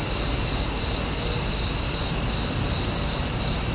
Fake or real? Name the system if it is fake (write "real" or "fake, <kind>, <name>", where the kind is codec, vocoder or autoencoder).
real